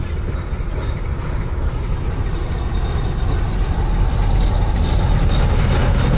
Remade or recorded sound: recorded